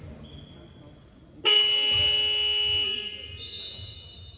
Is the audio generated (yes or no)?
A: no